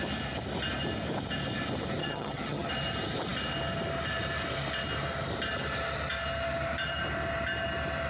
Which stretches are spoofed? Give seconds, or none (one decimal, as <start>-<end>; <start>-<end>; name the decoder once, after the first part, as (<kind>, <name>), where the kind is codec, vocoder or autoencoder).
2.0-2.7 (vocoder, HiFi-GAN)

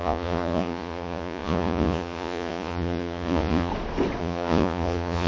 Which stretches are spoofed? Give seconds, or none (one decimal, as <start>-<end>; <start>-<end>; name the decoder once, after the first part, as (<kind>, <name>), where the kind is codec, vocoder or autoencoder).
0.0-3.7 (vocoder, Vocos); 4.2-5.3